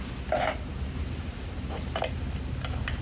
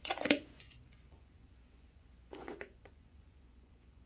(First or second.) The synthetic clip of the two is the second